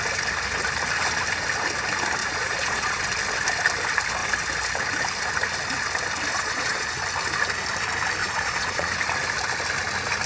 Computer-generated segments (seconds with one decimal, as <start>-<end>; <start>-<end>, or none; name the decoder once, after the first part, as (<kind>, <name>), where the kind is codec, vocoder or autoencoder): 2.2-3.0 (vocoder, Vocos); 6.3-7.0; 8.2-8.9